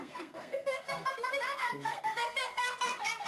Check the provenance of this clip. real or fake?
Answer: fake